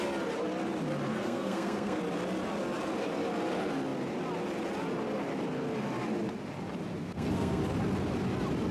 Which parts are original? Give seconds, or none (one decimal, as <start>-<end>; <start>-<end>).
0.0-1.1; 2.0-7.0; 7.6-8.7